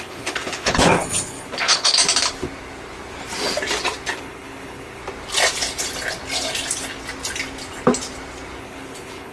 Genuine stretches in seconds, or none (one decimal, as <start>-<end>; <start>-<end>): 2.0-4.1; 5.0-8.6